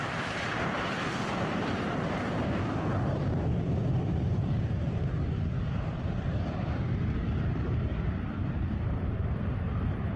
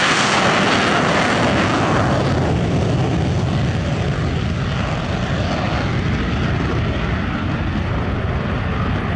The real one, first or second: second